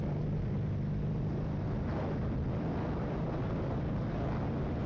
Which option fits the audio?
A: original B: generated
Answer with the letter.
A